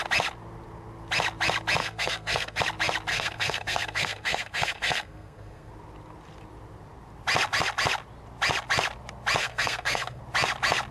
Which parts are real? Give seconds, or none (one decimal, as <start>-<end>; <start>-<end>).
0.0-1.8; 2.6-3.1; 5.7-9.4; 10.2-10.9